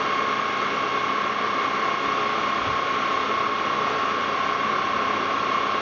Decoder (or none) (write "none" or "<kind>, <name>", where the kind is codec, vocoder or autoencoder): none